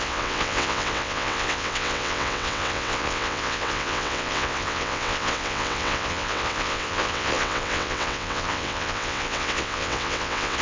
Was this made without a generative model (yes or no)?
no